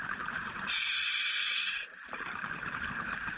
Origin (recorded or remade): recorded